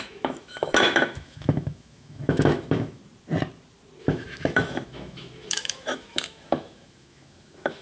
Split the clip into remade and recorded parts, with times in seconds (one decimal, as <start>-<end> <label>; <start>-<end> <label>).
0.0-3.0 remade; 3.0-4.0 recorded; 4.0-7.8 remade

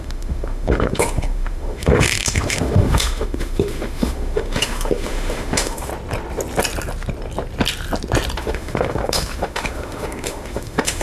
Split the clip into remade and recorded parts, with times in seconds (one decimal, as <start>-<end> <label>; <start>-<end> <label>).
0.0-5.9 remade; 5.9-8.4 recorded; 8.4-11.0 remade

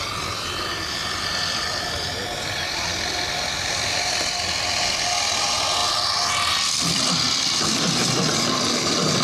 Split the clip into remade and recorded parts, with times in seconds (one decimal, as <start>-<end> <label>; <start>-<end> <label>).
0.0-9.2 recorded

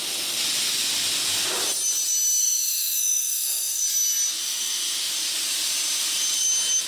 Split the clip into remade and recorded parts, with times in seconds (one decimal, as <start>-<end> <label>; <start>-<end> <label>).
0.0-2.4 recorded; 2.4-3.8 remade; 3.8-4.4 recorded; 4.4-5.1 remade; 5.1-6.9 recorded